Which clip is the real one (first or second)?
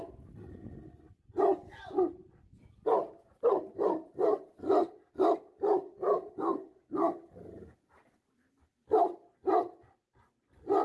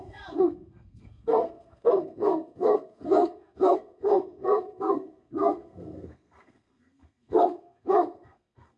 first